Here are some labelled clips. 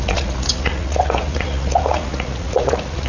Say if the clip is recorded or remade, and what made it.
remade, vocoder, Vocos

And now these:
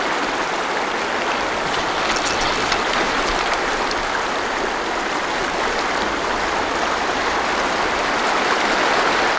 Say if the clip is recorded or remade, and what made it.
recorded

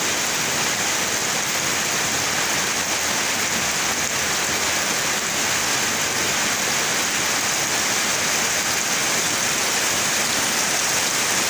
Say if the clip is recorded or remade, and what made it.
recorded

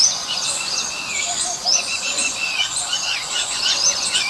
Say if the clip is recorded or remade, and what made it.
remade, vocoder, Vocos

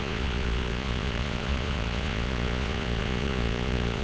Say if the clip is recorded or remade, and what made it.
remade, vocoder, Vocos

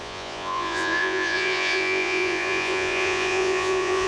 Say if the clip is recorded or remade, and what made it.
remade, vocoder, Vocos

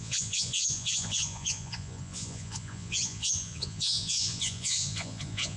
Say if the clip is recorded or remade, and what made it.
remade, vocoder, Vocos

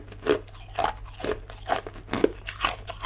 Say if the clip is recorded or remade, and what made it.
recorded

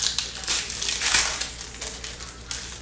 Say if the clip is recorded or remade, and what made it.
recorded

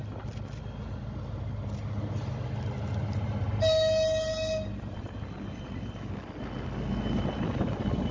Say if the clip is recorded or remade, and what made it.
recorded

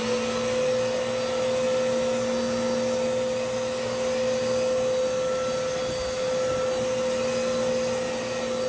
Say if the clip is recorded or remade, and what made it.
recorded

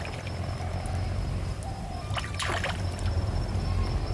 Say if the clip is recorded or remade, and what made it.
recorded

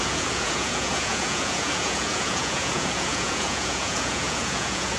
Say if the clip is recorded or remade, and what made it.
remade, vocoder, Vocos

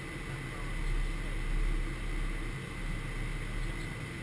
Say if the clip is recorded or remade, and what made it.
recorded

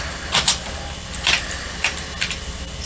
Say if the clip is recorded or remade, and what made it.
recorded